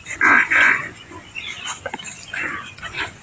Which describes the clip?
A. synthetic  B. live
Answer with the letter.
A